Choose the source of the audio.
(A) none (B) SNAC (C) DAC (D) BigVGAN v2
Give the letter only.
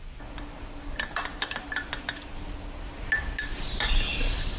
A